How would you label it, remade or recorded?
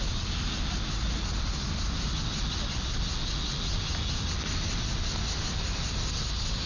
recorded